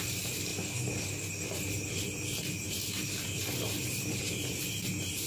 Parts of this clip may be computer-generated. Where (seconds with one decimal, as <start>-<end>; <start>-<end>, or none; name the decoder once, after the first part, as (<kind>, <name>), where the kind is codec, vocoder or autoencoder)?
0.0-0.5 (vocoder, BigVGAN v2); 2.9-5.3